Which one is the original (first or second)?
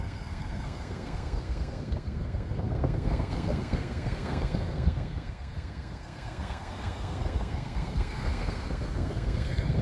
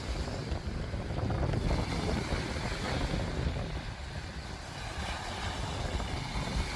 second